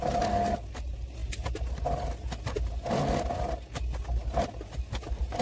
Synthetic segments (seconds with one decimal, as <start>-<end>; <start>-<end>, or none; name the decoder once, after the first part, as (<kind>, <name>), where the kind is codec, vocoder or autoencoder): none